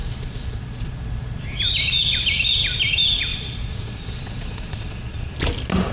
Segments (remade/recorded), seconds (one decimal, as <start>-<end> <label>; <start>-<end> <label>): 0.0-1.4 remade; 1.4-3.3 recorded; 3.3-5.3 remade; 5.3-5.9 recorded